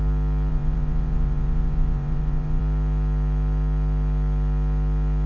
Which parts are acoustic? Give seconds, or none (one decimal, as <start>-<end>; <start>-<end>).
0.0-0.5; 2.6-5.3